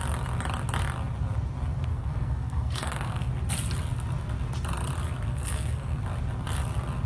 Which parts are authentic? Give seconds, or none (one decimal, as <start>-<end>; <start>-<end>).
0.0-1.9; 3.3-5.3; 6.0-7.1